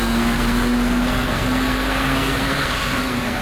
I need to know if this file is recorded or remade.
remade